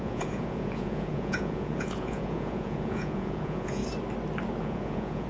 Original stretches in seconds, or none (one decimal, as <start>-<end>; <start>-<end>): 3.8-4.6